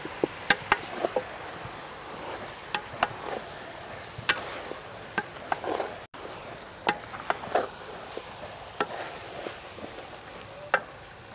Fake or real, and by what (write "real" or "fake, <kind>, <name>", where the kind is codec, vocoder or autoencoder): real